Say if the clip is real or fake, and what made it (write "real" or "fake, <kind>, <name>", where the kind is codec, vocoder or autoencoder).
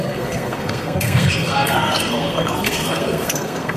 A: fake, codec, SNAC